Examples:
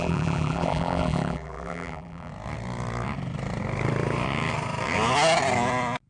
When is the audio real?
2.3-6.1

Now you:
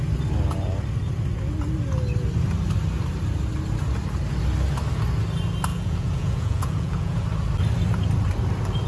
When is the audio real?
0.0-5.7; 7.2-8.9

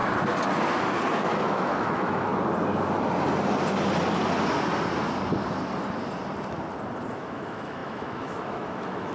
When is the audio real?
0.0-1.1; 2.3-7.1

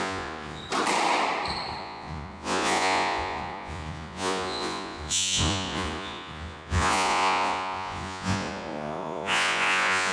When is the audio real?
0.6-1.8

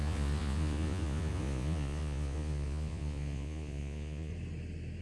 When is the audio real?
4.3-5.0

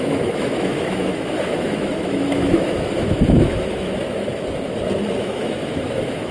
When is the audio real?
4.3-5.2

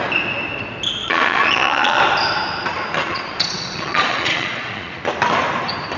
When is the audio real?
0.0-1.0; 2.0-3.0; 5.0-6.0

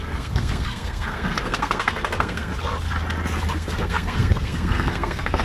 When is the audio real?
2.5-3.5